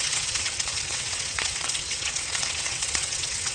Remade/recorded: remade